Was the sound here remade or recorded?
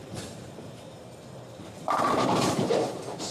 remade